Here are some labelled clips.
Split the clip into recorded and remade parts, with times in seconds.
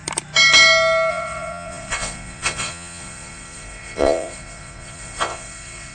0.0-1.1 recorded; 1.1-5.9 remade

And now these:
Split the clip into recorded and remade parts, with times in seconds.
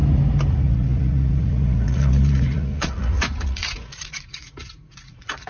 0.0-0.5 recorded; 0.5-5.5 remade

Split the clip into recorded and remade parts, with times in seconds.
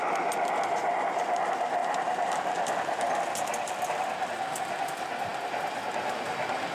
0.0-1.8 recorded; 1.8-2.4 remade; 2.4-6.7 recorded